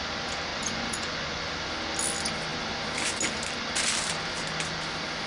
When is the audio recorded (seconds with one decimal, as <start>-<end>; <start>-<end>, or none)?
0.0-0.5; 1.4-5.3